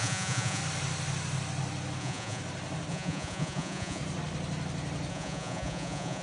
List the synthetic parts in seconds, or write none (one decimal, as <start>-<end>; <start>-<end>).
0.0-0.6; 2.0-2.4; 2.9-4.0; 5.1-6.2